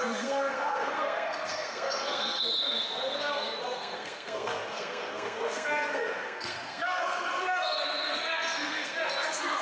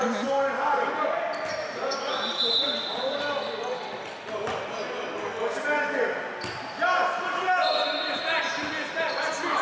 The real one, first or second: second